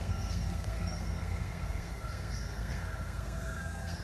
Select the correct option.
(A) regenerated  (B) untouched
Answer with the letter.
A